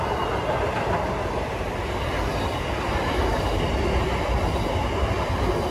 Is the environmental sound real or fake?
real